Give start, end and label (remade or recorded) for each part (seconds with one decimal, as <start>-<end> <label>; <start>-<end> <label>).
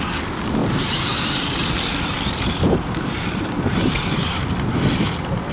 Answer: 0.0-0.6 recorded; 0.6-3.9 remade; 3.9-5.5 recorded